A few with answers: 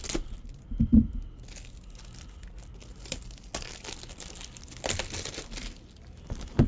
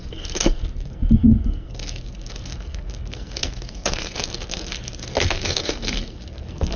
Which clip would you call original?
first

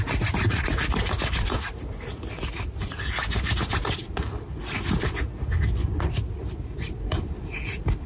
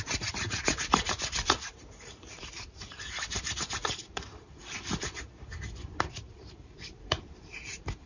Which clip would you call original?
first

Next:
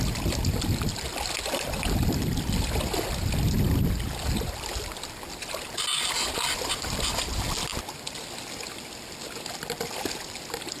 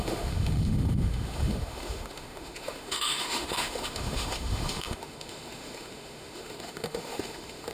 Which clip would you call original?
first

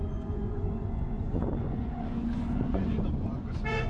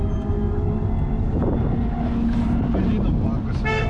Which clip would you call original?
second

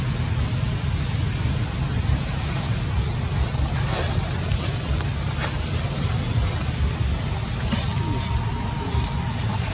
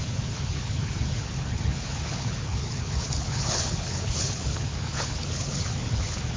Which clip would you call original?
first